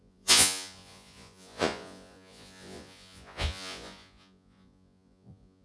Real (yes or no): no